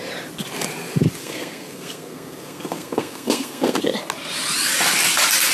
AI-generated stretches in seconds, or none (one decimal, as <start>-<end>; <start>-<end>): 1.2-3.8